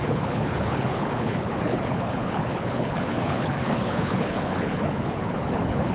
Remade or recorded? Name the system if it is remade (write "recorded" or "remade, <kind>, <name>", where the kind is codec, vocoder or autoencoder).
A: remade, codec, HILCodec